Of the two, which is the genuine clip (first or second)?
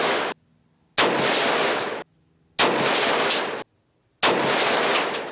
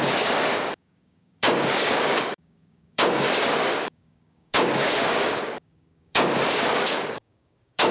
first